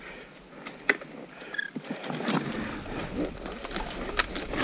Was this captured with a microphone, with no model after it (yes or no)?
yes